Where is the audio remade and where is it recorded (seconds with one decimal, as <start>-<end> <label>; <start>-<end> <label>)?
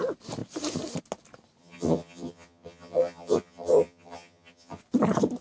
0.0-1.6 recorded; 1.6-4.8 remade; 4.8-5.4 recorded